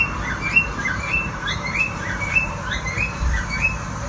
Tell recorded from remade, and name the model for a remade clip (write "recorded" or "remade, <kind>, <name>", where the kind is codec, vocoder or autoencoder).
remade, vocoder, BigVGAN v2